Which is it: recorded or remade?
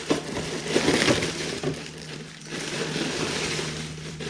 remade